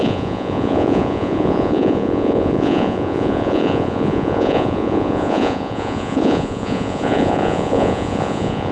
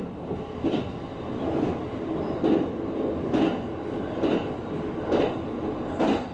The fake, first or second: first